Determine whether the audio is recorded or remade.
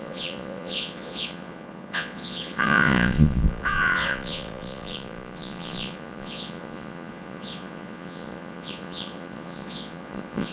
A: remade